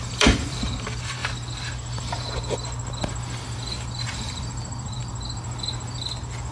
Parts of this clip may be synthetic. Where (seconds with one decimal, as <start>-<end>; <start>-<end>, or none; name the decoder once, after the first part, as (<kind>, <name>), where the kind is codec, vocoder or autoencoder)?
0.0-1.2 (vocoder, BigVGAN v2); 4.0-5.0